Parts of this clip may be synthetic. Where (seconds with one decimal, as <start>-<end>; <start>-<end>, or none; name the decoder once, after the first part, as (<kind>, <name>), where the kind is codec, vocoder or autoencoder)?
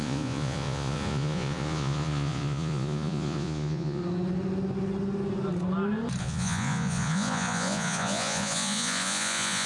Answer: 0.0-4.0 (vocoder, Vocos); 6.2-9.7